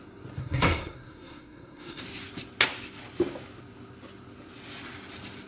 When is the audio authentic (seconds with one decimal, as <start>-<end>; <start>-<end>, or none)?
0.0-0.4; 2.0-5.5